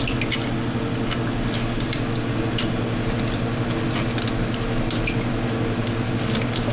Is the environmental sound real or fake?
real